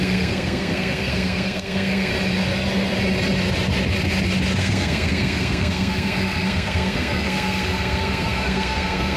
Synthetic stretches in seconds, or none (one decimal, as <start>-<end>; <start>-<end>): 0.0-2.1; 4.6-9.2